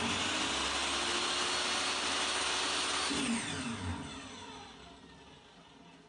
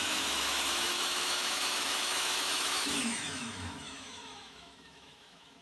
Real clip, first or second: first